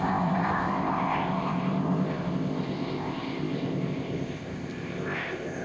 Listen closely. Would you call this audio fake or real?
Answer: fake